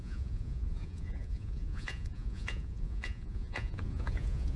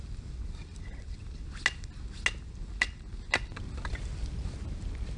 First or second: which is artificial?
first